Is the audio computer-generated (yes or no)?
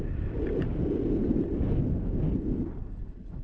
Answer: no